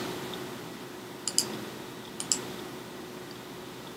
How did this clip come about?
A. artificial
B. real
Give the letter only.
B